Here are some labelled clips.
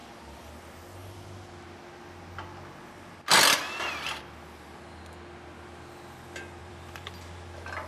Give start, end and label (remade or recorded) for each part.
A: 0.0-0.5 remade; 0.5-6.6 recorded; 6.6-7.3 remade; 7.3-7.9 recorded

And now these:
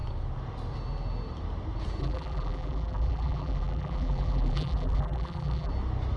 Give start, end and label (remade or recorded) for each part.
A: 0.0-2.0 recorded; 2.0-5.7 remade; 5.7-6.2 recorded

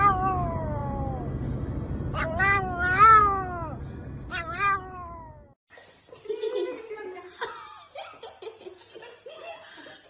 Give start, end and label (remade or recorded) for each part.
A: 0.0-10.1 recorded

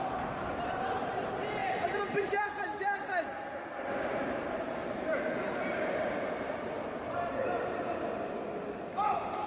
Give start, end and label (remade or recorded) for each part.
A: 0.0-1.6 recorded; 1.6-2.4 remade; 2.4-4.2 recorded; 4.2-8.1 remade; 8.1-9.5 recorded

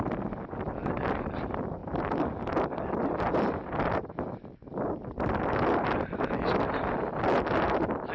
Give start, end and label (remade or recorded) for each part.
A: 0.0-1.8 recorded; 1.8-4.1 remade; 4.1-8.1 recorded